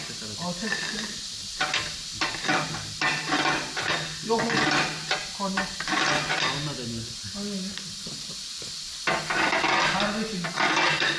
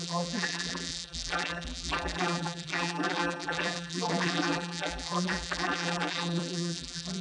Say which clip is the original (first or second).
first